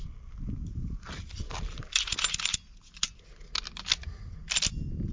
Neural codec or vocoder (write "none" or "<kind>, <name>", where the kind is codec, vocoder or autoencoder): none